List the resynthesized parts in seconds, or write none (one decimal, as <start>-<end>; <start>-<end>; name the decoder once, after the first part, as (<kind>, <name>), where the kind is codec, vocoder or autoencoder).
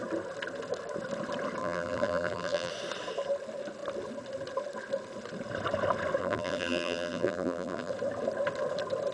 1.6-2.7 (vocoder, BigVGAN v2); 6.2-7.9